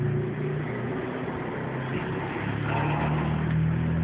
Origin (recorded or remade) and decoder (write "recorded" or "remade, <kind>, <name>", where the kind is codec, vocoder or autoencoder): recorded